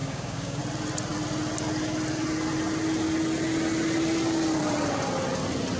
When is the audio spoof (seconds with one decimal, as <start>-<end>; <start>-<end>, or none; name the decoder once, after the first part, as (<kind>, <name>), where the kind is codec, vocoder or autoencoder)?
0.0-0.6 (codec, DAC)